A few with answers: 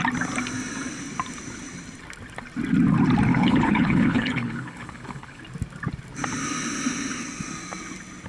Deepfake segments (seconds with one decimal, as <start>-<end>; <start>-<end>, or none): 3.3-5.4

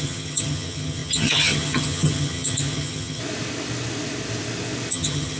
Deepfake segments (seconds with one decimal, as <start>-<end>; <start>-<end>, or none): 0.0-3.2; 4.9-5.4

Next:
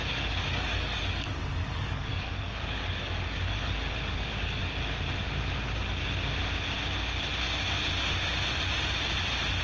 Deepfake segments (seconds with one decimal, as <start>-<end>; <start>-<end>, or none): 0.0-4.6